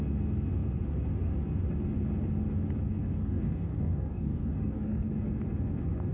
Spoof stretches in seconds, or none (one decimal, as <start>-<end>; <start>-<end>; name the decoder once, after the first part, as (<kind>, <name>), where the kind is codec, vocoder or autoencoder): 3.0-5.1 (codec, DAC)